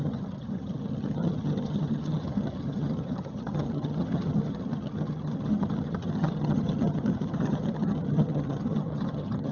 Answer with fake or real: fake